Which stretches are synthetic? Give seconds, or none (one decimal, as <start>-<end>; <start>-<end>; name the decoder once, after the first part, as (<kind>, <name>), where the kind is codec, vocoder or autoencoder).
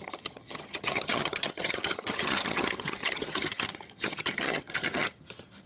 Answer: 0.0-5.7 (vocoder, HiFi-GAN)